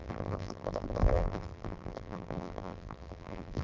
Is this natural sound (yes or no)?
no